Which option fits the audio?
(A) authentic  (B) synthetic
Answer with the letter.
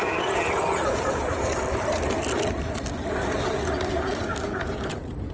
A